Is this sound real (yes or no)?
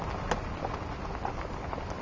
yes